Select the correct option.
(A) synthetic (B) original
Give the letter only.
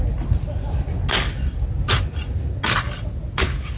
B